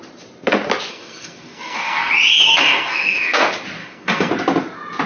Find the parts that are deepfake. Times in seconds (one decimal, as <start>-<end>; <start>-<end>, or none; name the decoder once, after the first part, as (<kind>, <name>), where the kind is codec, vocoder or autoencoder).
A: 0.9-2.1 (codec, SNAC); 2.5-3.4; 3.8-4.3